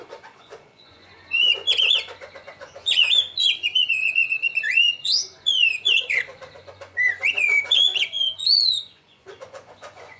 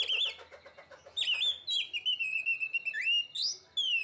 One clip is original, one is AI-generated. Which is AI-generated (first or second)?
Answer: first